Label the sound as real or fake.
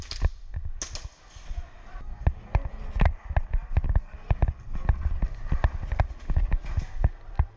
real